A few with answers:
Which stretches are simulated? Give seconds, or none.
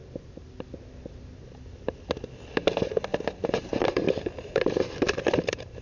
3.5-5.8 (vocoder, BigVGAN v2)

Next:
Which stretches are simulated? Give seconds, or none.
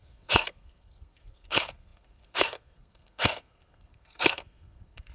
0.0-5.1 (codec, SNAC)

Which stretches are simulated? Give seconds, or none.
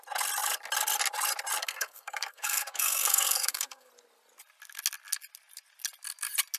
1.6-3.9 (codec, SNAC)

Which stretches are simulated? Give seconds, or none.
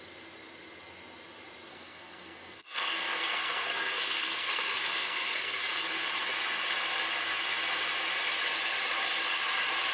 1.7-5.6 (codec, SNAC)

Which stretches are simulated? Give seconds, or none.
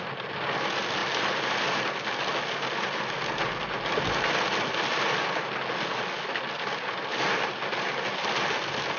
none